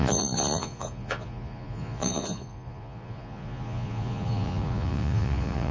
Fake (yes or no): yes